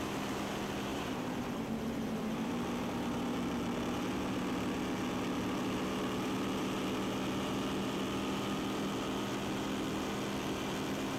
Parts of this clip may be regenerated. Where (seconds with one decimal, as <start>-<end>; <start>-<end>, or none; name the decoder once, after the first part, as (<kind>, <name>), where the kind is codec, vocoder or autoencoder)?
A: 0.9-2.5 (vocoder, BigVGAN v2)